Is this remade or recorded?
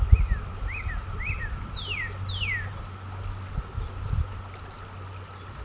recorded